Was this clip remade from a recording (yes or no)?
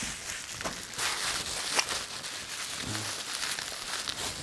no